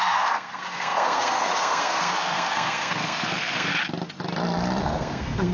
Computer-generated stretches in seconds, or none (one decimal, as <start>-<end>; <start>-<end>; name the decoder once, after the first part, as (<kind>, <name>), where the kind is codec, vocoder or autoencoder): 0.0-3.7 (codec, SNAC); 4.8-5.5